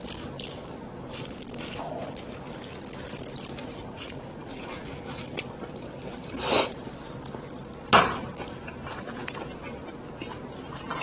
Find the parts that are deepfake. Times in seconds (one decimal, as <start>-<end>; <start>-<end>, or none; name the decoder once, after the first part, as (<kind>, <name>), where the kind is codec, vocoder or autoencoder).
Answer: 3.6-4.8 (vocoder, Vocos)